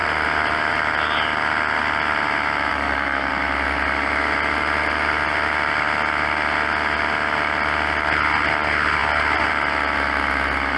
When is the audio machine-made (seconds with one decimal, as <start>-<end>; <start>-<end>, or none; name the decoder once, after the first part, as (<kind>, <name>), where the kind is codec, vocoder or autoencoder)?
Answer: 2.7-3.3 (codec, DAC)